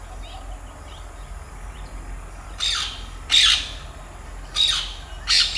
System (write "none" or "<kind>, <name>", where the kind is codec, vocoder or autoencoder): none